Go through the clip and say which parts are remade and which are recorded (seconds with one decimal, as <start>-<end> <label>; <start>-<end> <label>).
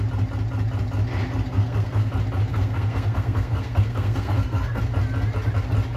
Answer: 0.0-1.5 recorded; 1.5-2.1 remade; 2.1-2.5 recorded; 2.5-4.8 remade; 4.8-6.0 recorded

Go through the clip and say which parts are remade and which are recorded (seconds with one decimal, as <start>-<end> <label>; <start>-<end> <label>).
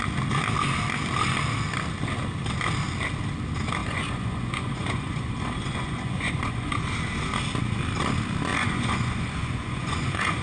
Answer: 0.0-3.8 recorded; 3.8-6.7 remade; 6.7-8.5 recorded; 8.5-10.4 remade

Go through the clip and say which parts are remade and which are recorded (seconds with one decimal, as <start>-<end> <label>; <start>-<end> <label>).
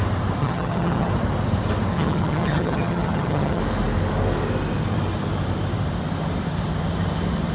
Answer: 0.0-0.4 recorded; 0.4-1.1 remade; 1.1-1.9 recorded; 1.9-3.6 remade; 3.6-7.5 recorded